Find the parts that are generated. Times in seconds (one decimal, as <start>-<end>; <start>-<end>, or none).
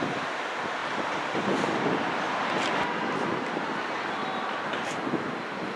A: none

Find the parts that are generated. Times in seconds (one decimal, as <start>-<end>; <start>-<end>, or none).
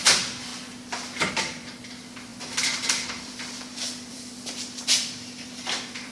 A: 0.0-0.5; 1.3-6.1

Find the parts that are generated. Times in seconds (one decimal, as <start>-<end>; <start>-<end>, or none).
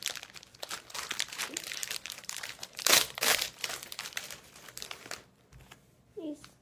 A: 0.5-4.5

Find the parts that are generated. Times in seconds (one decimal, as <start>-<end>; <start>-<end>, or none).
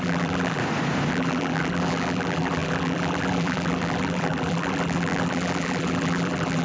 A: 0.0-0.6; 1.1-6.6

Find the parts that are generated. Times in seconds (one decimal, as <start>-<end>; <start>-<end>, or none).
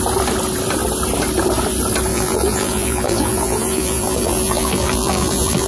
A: 2.1-5.7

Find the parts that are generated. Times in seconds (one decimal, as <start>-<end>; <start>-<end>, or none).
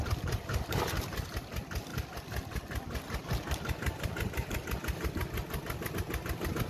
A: 0.0-1.3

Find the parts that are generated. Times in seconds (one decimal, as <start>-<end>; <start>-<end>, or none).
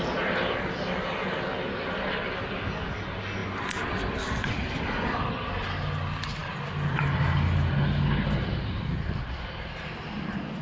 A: 3.4-4.5; 6.4-7.0; 8.7-10.6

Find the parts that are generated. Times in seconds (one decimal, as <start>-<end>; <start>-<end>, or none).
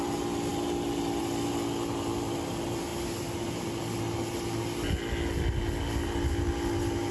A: none